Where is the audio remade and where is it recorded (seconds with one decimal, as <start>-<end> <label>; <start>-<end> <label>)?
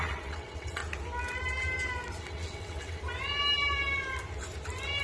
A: 0.0-0.8 remade; 0.8-2.2 recorded; 2.2-3.0 remade; 3.0-5.0 recorded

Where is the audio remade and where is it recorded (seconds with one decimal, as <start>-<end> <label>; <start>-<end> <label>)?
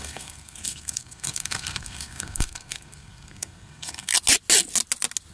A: 0.0-4.1 remade; 4.1-5.3 recorded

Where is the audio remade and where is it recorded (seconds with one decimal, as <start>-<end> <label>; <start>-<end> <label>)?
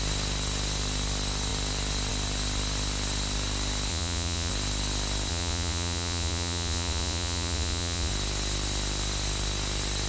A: 0.0-3.9 recorded; 3.9-4.5 remade; 4.5-5.3 recorded; 5.3-8.1 remade; 8.1-10.1 recorded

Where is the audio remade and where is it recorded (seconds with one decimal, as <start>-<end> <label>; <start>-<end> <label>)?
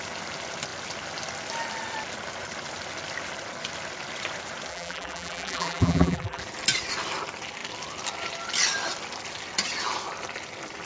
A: 0.0-4.7 recorded; 4.7-6.4 remade; 6.4-10.9 recorded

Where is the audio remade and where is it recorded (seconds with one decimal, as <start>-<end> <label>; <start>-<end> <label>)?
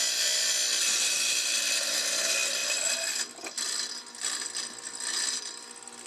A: 0.0-6.1 recorded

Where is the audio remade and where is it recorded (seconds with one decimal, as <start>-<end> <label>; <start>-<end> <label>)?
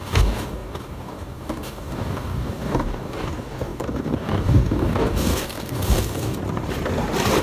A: 0.0-6.4 remade; 6.4-7.4 recorded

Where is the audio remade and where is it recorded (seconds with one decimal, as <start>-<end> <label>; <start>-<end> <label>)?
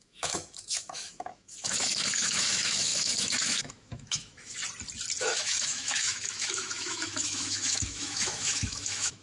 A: 0.0-4.6 remade; 4.6-5.2 recorded; 5.2-9.2 remade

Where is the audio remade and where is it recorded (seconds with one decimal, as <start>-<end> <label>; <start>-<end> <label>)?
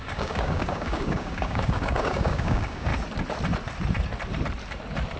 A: 0.0-2.9 remade; 2.9-5.2 recorded